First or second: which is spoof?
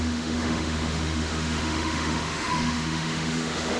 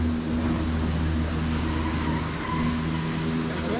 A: first